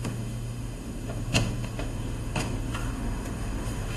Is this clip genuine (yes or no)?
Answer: no